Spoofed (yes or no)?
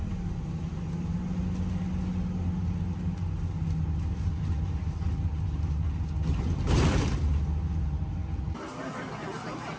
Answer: no